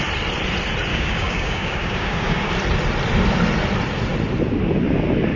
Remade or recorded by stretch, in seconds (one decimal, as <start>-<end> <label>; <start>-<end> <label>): 0.0-0.9 recorded; 0.9-2.5 remade; 2.5-5.4 recorded